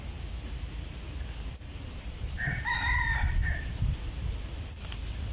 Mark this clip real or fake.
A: real